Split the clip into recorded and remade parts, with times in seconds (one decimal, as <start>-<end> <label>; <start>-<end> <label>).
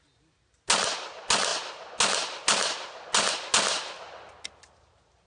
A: 0.0-5.3 recorded